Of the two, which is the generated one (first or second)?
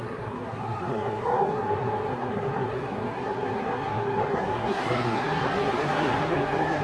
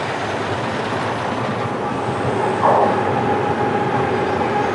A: first